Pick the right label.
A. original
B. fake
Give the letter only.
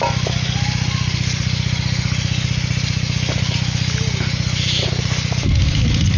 A